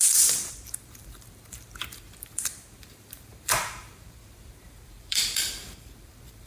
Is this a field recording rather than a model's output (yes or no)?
no